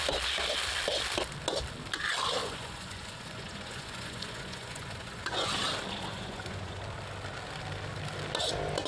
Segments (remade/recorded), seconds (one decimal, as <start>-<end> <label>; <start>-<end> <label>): 0.0-2.4 recorded; 2.4-5.5 remade; 5.5-6.1 recorded; 6.1-6.8 remade; 6.8-8.9 recorded